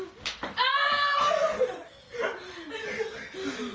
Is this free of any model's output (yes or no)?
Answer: yes